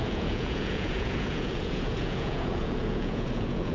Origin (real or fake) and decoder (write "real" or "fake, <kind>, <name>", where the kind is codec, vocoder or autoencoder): fake, vocoder, Vocos